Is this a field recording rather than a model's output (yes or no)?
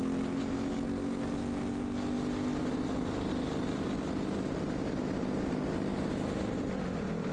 yes